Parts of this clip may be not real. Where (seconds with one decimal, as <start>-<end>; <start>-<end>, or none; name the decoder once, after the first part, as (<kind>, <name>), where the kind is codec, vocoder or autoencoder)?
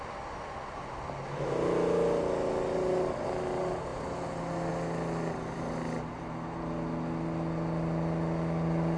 none